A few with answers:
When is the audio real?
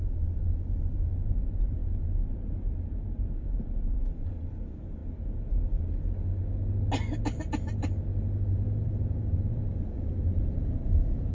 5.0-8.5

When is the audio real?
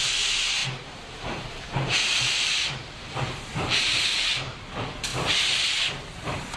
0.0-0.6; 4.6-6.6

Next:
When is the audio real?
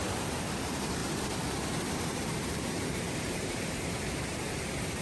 none